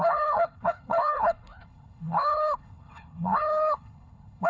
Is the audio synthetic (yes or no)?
yes